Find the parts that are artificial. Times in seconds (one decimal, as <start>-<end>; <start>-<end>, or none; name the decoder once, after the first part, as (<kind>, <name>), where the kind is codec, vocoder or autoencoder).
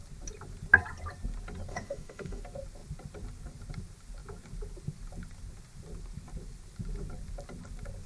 1.7-2.4 (autoencoder, DAC-VAE)